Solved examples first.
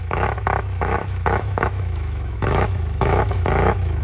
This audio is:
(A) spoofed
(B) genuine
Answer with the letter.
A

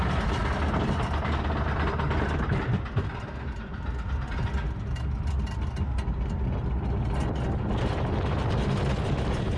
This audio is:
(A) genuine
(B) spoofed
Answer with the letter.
A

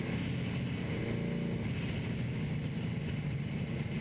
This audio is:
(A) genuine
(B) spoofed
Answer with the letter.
A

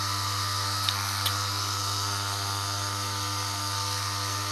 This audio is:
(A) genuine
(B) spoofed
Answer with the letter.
B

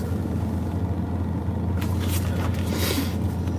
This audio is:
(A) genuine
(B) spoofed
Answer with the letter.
A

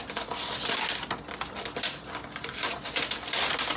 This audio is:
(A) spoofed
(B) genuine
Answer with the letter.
B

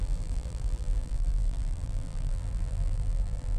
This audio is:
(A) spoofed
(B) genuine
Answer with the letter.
A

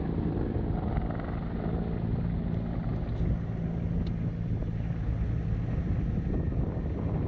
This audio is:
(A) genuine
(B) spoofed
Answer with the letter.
A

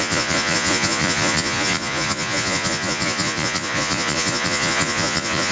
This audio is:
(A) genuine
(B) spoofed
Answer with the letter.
B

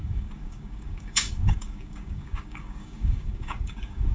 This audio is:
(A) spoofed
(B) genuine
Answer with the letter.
A